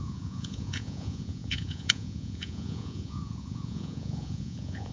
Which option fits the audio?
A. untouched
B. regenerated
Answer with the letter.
B